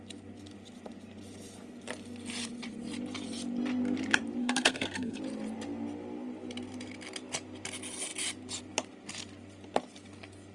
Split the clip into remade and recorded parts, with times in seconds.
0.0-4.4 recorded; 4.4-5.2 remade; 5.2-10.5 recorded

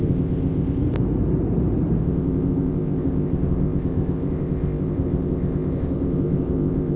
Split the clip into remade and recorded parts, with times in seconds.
0.0-0.8 remade; 0.8-2.0 recorded; 2.0-7.0 remade

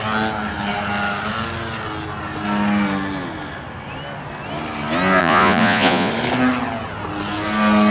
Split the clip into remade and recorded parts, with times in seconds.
0.0-5.2 recorded; 5.2-6.1 remade; 6.1-7.9 recorded

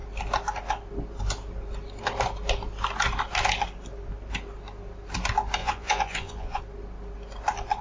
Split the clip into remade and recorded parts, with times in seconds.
0.0-5.6 recorded; 5.6-6.6 remade; 6.6-7.8 recorded

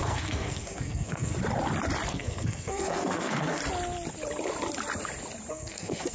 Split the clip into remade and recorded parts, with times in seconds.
0.0-1.3 remade; 1.3-2.1 recorded; 2.1-3.6 remade; 3.6-5.5 recorded; 5.5-6.1 remade

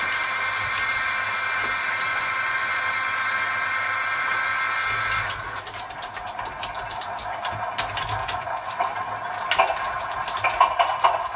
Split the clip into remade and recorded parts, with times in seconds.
0.0-2.1 recorded; 2.1-2.8 remade; 2.8-8.2 recorded; 8.2-8.7 remade; 8.7-11.4 recorded